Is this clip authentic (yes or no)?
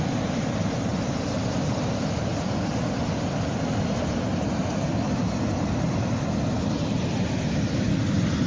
yes